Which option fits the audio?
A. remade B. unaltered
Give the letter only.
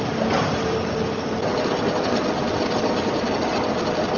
B